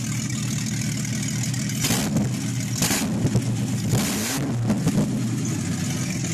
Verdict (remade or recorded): recorded